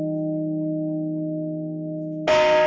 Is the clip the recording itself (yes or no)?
yes